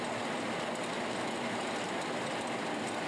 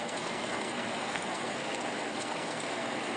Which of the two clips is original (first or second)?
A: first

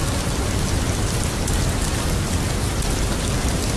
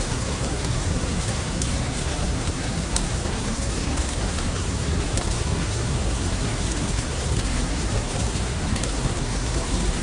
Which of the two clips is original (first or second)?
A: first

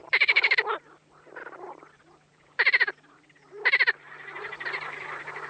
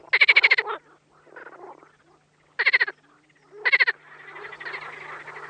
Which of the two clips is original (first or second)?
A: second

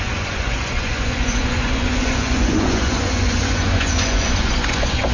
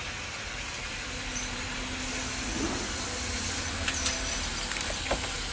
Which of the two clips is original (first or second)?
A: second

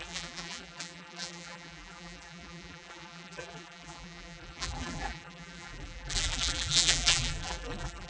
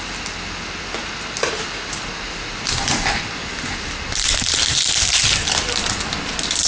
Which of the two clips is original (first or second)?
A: second